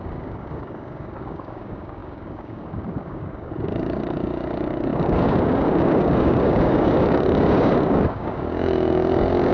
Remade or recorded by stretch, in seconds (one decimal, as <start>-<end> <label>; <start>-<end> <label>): 0.0-9.5 remade